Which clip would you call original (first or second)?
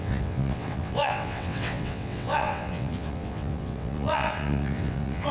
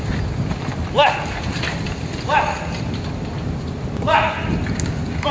second